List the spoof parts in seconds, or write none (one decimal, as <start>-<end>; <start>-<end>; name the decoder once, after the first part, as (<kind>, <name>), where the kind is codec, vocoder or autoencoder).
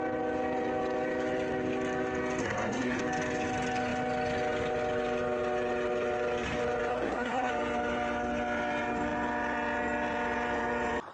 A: 2.4-3.0 (codec, SNAC); 6.9-7.5